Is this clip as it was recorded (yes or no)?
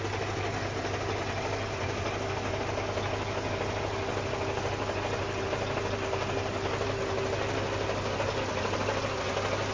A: yes